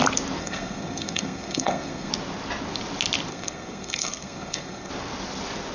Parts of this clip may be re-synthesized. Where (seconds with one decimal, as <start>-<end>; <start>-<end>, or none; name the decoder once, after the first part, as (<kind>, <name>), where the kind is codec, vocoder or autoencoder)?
0.4-2.1 (codec, SNAC); 3.3-4.9